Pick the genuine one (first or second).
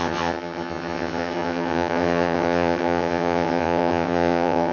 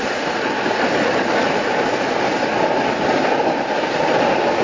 second